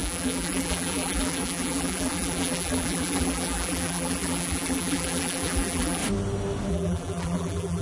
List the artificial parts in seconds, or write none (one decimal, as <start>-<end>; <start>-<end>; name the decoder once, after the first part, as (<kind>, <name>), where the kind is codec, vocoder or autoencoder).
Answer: 0.0-6.0 (vocoder, BigVGAN v2); 6.7-7.8